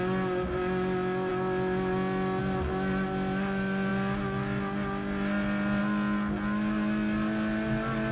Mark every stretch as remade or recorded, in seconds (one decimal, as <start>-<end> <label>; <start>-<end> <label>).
0.0-8.1 recorded